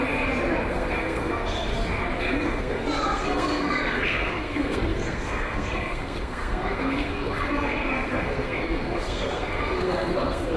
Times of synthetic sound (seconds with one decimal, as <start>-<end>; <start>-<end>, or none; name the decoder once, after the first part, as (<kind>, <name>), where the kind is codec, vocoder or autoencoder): 0.7-1.7 (codec, SNAC); 2.2-10.6